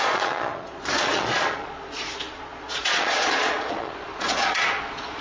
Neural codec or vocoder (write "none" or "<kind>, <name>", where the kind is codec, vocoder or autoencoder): vocoder, Vocos